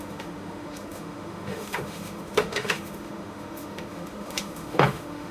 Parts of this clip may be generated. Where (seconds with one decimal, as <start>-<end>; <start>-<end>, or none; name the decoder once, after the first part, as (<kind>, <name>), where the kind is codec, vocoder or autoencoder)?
0.0-5.3 (autoencoder, DAC-VAE)